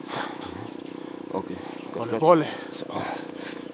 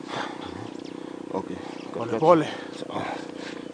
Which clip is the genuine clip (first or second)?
second